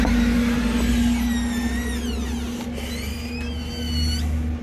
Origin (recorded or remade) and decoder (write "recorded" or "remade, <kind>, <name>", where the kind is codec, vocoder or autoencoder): recorded